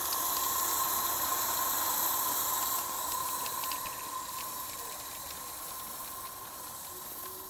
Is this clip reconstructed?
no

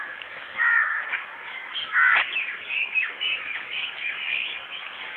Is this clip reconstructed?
yes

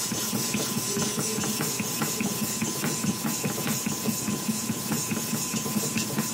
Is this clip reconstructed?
yes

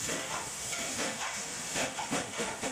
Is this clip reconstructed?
yes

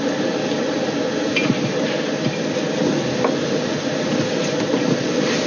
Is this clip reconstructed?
no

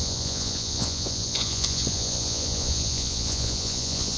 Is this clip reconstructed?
yes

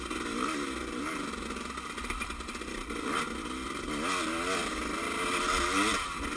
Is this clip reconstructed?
no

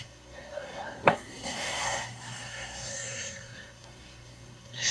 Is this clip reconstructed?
yes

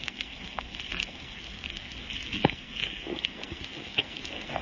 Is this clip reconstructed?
yes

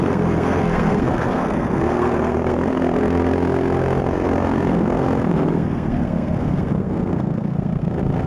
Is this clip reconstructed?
yes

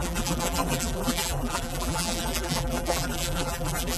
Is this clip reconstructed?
yes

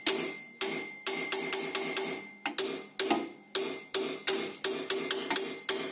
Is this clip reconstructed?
no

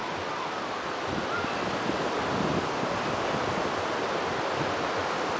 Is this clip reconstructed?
no